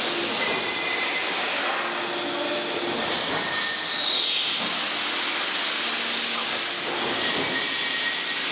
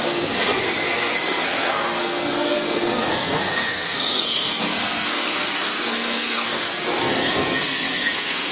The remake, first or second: second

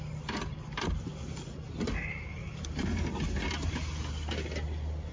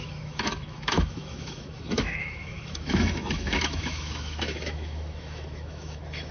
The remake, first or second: second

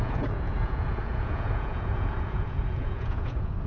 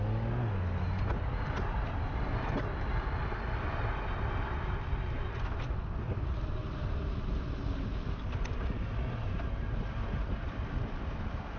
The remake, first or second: first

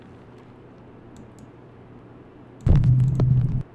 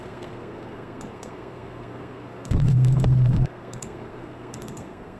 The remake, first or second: second